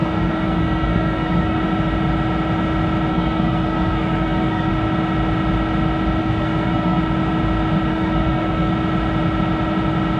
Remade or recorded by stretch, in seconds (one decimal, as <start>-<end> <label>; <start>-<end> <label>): 0.0-1.6 remade; 1.6-3.1 recorded; 3.1-4.7 remade; 4.7-6.2 recorded; 6.2-7.0 remade; 7.0-7.9 recorded; 7.9-8.7 remade; 8.7-10.2 recorded